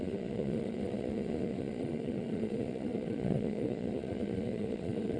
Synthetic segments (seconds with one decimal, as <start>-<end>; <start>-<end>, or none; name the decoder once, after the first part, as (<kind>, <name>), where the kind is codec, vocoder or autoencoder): 0.0-5.2 (vocoder, Vocos)